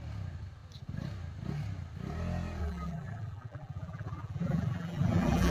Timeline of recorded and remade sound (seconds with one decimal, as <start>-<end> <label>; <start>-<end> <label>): 0.0-2.6 recorded; 2.6-5.5 remade